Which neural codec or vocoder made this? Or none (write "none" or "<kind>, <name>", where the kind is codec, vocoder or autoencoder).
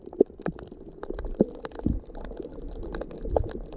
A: none